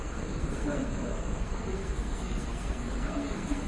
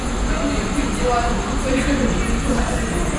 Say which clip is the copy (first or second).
first